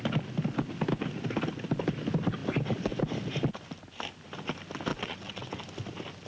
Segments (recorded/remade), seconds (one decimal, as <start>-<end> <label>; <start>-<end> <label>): 0.0-4.9 recorded; 4.9-5.6 remade; 5.6-6.3 recorded